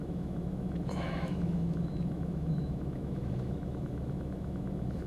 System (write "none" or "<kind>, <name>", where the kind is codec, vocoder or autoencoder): autoencoder, DAC-VAE